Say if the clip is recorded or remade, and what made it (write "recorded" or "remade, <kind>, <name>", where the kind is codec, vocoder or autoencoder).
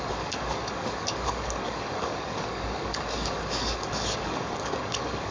remade, codec, DAC